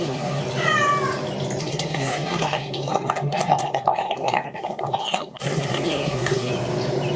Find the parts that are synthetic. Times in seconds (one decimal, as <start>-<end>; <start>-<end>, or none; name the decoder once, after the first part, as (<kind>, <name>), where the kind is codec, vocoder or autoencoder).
0.0-0.4 (codec, SNAC); 1.6-6.5